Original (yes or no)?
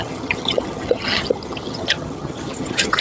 no